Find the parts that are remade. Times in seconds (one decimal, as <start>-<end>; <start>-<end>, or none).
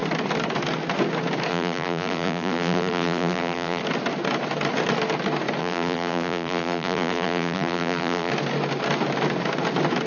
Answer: 1.5-3.8; 5.6-8.3